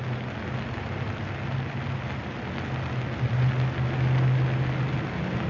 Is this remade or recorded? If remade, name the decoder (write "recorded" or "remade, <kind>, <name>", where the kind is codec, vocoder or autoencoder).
recorded